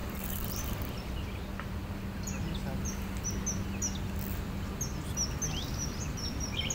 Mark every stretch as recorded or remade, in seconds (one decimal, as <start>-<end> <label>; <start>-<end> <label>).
0.0-6.7 recorded

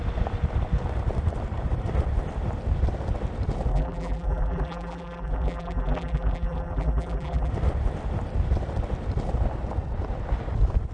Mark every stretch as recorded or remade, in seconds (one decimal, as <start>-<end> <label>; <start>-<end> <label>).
0.0-3.7 recorded; 3.7-7.5 remade; 7.5-10.9 recorded

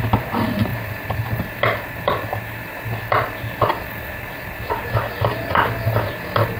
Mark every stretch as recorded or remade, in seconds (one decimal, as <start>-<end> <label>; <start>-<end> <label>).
0.0-6.6 recorded

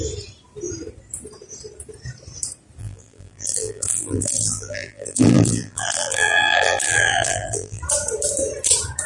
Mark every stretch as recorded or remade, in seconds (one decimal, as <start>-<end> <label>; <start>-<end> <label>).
0.0-2.8 recorded; 2.8-7.8 remade; 7.8-9.1 recorded